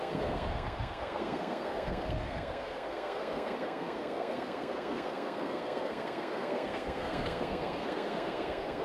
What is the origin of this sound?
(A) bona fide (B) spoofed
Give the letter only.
B